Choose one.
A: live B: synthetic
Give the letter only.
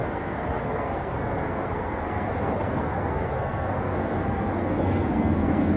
B